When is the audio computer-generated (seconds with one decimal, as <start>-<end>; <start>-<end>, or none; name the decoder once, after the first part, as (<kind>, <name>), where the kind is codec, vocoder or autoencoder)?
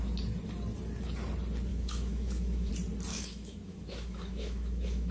1.7-2.7 (autoencoder, DAC-VAE); 3.1-5.1